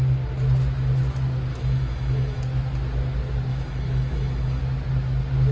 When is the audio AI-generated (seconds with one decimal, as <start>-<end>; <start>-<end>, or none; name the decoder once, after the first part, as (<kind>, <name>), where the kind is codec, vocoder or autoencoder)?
1.5-2.4 (autoencoder, DAC-VAE); 3.5-4.6